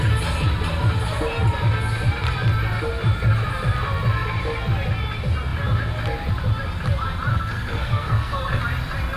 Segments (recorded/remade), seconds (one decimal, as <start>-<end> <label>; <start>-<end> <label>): 0.0-7.3 recorded; 7.3-8.6 remade; 8.6-9.2 recorded